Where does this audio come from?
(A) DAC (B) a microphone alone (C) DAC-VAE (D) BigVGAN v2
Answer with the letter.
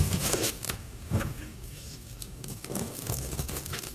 A